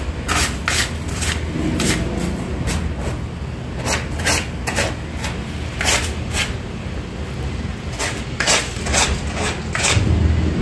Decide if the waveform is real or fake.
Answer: real